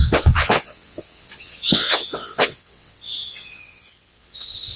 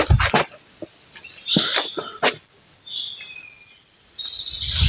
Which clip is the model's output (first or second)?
first